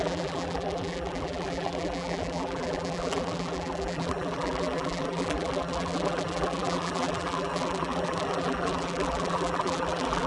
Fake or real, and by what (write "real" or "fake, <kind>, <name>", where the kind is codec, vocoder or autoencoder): fake, vocoder, BigVGAN v2